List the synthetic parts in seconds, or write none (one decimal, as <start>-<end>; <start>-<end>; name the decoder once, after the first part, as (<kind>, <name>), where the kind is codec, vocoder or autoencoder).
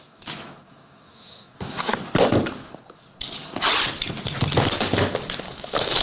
0.0-1.9 (autoencoder, DAC-VAE); 5.5-6.0